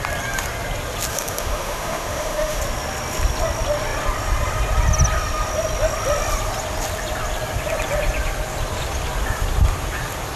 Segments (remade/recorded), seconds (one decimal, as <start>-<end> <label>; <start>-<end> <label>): 0.0-1.1 recorded; 1.1-2.6 remade; 2.6-10.4 recorded

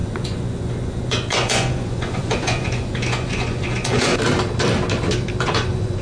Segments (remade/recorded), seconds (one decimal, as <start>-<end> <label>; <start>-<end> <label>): 0.0-4.1 remade; 4.1-5.4 recorded; 5.4-6.0 remade

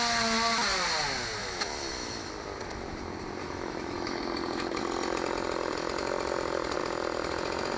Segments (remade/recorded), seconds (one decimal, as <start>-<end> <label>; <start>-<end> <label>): 0.0-1.4 recorded; 1.4-2.3 remade; 2.3-3.4 recorded; 3.4-4.2 remade; 4.2-7.8 recorded

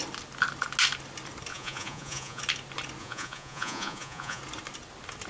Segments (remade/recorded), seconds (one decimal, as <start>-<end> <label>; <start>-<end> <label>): 0.0-1.5 recorded; 1.5-2.4 remade; 2.4-3.0 recorded; 3.0-4.4 remade; 4.4-5.3 recorded

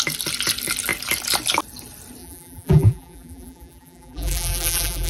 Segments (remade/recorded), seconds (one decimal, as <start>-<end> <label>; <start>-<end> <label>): 0.0-2.2 recorded; 2.2-5.1 remade